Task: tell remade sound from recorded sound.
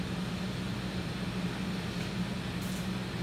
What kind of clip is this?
recorded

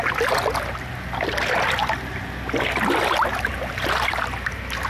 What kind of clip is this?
recorded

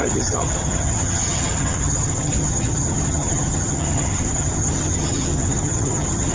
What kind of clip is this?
remade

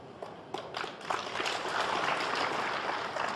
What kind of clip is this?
recorded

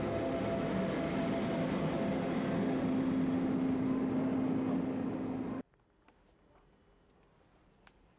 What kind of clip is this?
recorded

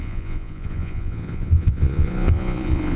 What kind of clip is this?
remade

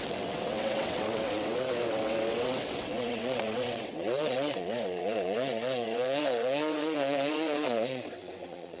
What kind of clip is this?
remade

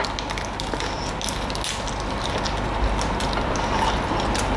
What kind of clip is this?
recorded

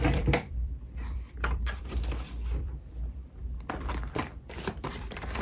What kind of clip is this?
remade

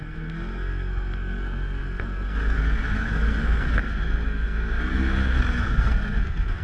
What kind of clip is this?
remade